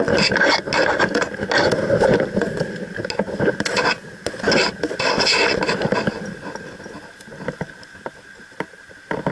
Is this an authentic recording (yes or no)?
yes